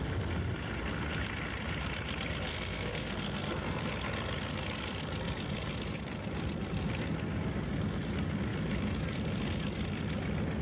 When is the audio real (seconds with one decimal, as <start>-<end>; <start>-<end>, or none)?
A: 0.0-2.5; 3.9-10.6